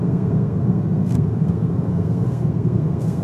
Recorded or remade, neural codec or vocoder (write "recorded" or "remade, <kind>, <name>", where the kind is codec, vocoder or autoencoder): remade, codec, SNAC